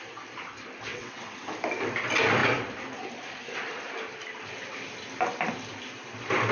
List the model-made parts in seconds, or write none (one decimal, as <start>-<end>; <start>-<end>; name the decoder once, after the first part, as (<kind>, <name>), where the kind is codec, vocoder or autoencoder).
0.9-1.5 (vocoder, WaveNeXt)